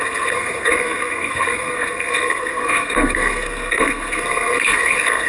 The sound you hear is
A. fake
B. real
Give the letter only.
A